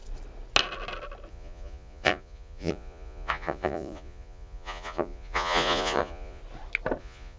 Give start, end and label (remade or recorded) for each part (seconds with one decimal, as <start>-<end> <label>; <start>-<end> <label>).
0.0-1.3 recorded; 1.3-6.4 remade; 6.4-7.0 recorded; 7.0-7.4 remade